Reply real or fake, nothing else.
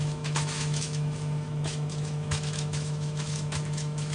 fake